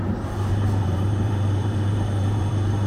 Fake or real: fake